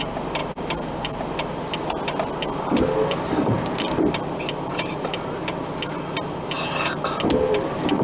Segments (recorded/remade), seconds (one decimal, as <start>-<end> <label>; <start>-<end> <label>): 0.0-8.0 recorded